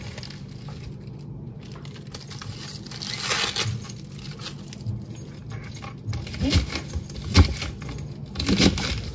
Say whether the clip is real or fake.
real